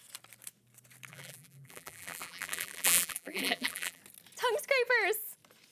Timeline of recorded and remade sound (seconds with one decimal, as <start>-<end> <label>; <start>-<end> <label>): 0.0-1.1 recorded; 1.1-4.0 remade; 4.0-5.7 recorded